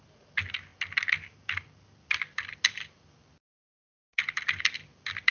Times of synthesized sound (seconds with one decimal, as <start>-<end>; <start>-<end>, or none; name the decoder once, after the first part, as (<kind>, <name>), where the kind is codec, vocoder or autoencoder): none